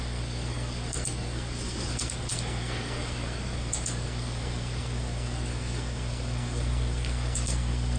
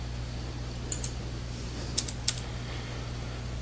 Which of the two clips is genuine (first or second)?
second